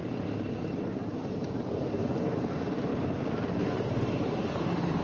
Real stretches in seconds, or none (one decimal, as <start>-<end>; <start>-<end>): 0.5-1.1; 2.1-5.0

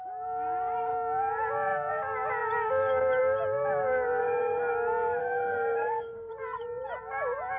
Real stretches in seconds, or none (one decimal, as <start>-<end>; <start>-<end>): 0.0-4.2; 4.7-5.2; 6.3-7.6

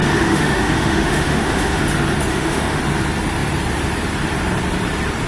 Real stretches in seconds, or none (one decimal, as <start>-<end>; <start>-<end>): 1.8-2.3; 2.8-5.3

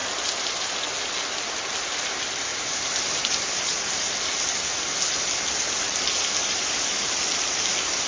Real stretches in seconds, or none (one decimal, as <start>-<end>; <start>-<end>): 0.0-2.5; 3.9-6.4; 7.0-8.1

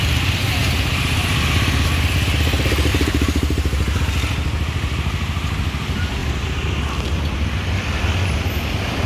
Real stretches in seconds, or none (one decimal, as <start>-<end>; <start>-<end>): 0.0-2.9; 4.0-6.2; 6.8-9.1

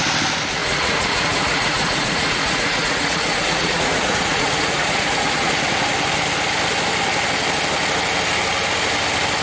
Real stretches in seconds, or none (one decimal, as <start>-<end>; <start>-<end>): 0.0-0.6; 5.5-9.4